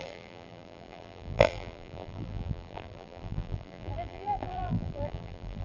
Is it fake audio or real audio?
fake